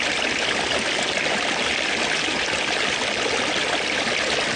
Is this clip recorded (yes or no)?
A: yes